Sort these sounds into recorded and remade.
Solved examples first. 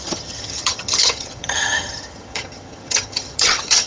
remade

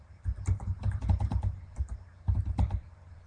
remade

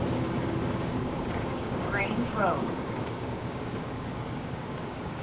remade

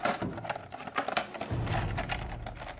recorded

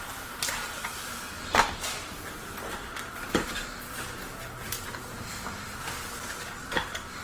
recorded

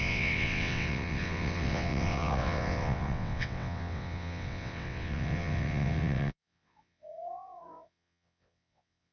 remade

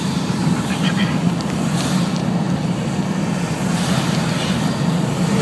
recorded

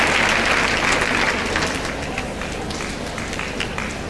recorded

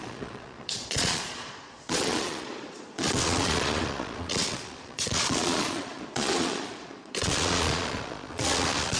remade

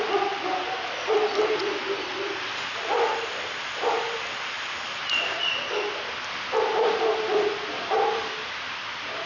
remade